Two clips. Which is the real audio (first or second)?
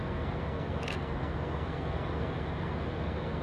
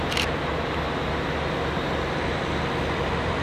second